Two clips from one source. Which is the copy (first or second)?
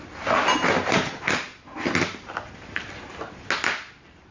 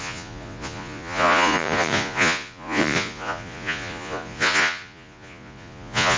second